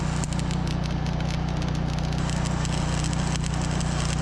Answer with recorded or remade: recorded